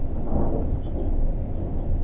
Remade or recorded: recorded